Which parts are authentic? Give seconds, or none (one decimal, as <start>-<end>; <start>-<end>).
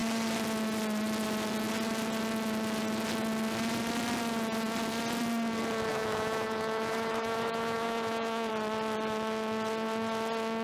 0.0-5.9; 8.5-10.6